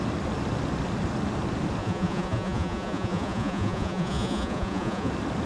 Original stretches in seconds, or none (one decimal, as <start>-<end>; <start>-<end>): 0.0-1.8; 5.1-5.5